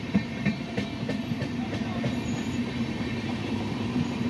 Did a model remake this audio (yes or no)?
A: yes